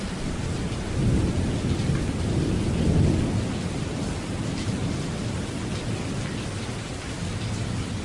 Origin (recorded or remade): recorded